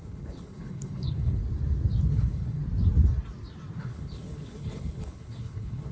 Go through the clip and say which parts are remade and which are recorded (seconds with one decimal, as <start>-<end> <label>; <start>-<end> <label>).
0.0-1.4 remade; 1.4-2.1 recorded; 2.1-2.6 remade; 2.6-3.8 recorded; 3.8-5.9 remade